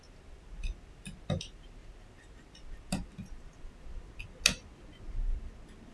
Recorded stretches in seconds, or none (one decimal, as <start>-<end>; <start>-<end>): 0.0-5.9